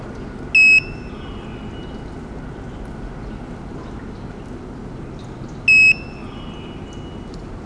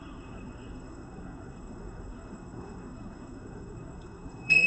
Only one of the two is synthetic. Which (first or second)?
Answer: second